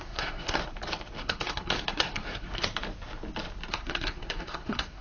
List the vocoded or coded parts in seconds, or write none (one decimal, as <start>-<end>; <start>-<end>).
0.0-0.6; 1.2-2.7; 3.7-5.0